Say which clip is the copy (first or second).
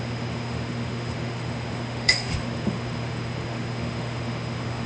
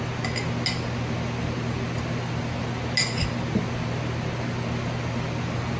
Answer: first